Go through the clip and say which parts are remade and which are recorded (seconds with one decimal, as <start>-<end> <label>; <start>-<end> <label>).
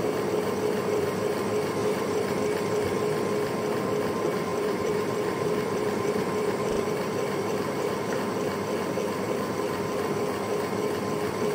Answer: 0.0-1.8 recorded; 1.8-2.4 remade; 2.4-4.5 recorded; 4.5-8.2 remade; 8.2-11.5 recorded